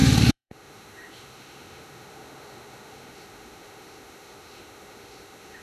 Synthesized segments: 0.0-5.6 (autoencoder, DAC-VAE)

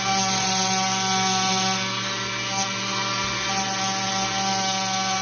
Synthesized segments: none

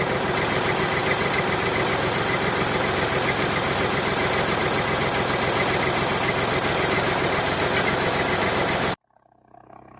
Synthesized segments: none

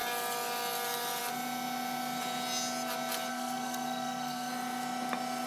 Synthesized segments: 3.3-4.5 (codec, SNAC)

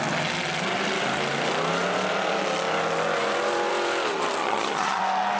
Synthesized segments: 4.4-5.0 (vocoder, HiFi-GAN)

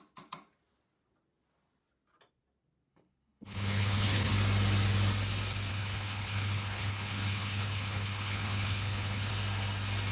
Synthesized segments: 2.9-4.3 (codec, HILCodec); 5.7-9.3

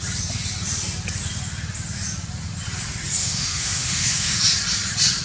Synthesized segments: 3.2-4.4 (autoencoder, DAC-VAE)

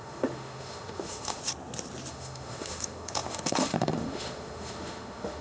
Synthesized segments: 0.0-1.4 (autoencoder, DAC-VAE); 2.1-5.4